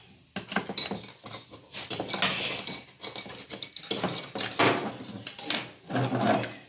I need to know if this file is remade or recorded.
recorded